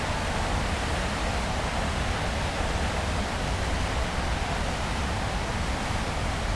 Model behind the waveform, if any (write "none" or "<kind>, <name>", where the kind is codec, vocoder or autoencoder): none